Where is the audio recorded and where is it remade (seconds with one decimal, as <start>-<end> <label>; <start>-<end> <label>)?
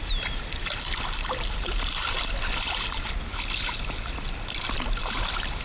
0.0-5.6 recorded